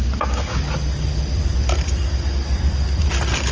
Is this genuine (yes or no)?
yes